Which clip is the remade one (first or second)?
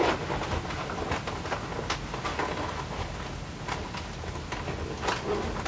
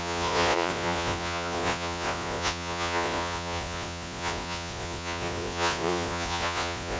second